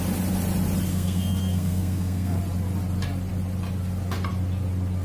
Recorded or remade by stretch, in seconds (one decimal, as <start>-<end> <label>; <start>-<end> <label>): 0.0-0.9 recorded; 0.9-2.4 remade; 2.4-5.0 recorded